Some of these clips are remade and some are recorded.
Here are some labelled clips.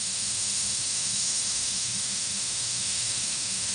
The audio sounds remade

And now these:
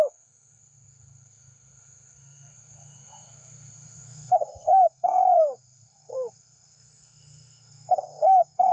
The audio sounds remade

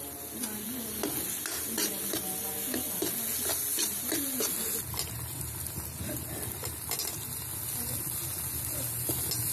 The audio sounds recorded